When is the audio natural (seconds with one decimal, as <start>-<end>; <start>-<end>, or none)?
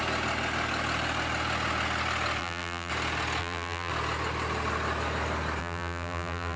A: 0.0-2.4; 2.9-3.4; 3.9-5.6